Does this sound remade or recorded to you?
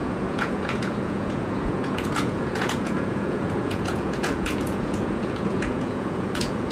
remade